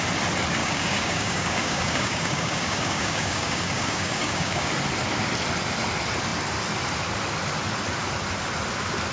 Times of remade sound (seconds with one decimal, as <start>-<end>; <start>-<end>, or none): 0.6-4.7